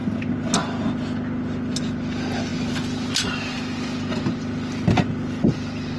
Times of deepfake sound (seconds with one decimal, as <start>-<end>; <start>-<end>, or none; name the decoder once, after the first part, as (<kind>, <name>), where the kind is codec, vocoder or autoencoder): none